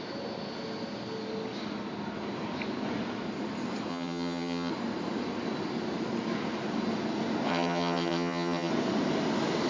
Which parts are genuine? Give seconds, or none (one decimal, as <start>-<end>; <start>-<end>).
0.0-3.9; 4.7-7.5; 8.7-9.7